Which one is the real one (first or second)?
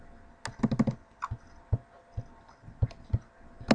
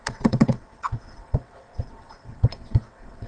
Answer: first